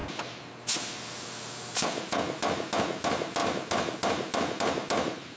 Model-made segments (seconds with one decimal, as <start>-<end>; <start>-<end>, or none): none